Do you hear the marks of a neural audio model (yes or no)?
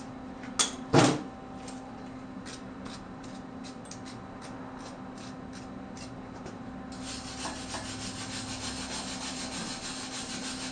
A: no